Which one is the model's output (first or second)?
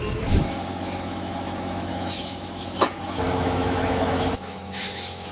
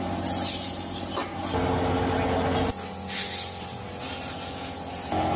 first